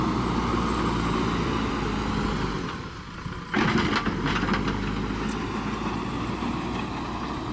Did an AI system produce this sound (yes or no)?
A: no